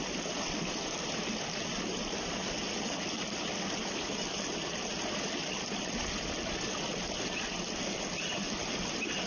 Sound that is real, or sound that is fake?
real